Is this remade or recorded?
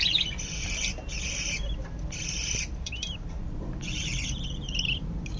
remade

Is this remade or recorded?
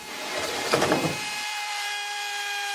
remade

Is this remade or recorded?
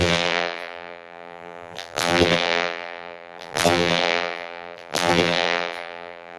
remade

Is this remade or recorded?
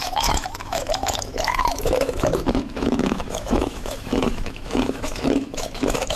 remade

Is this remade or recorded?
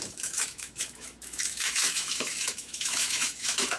remade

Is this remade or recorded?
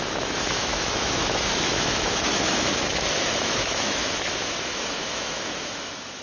remade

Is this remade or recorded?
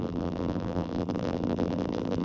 remade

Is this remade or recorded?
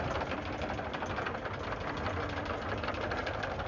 recorded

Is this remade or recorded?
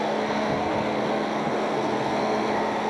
remade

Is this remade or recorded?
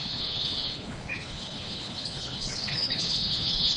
remade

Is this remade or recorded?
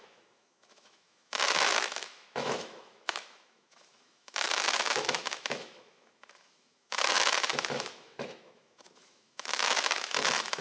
remade